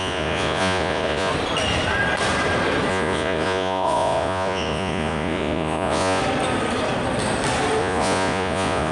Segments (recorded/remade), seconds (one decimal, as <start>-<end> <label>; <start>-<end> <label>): 0.0-1.3 remade; 1.3-2.9 recorded; 2.9-6.2 remade; 6.2-7.8 recorded; 7.8-8.9 remade